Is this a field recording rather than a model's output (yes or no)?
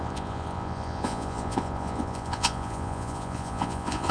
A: no